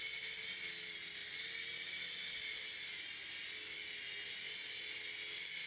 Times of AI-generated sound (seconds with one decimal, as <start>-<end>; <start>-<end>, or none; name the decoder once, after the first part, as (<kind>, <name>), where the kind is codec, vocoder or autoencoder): none